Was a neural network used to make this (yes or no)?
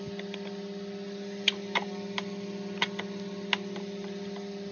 no